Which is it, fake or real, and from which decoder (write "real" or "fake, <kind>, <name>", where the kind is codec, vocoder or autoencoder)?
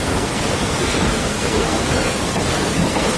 fake, codec, SNAC